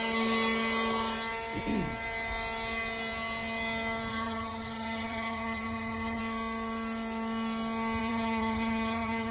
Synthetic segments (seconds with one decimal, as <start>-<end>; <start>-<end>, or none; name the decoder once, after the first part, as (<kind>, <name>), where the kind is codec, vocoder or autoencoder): 4.1-6.2 (vocoder, HiFi-GAN); 8.0-9.3